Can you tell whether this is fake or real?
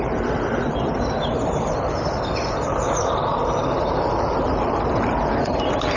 fake